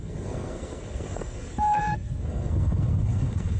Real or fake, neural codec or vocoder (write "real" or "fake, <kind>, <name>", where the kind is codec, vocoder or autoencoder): fake, codec, SNAC